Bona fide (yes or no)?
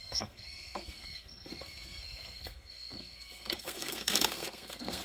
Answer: no